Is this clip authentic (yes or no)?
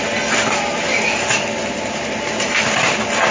yes